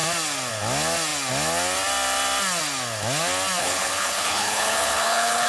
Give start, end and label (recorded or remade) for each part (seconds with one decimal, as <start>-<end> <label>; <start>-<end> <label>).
0.0-3.6 recorded; 3.6-5.5 remade